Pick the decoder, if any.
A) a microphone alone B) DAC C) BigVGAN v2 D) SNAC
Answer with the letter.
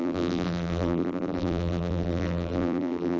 C